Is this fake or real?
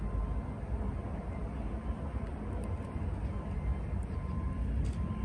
real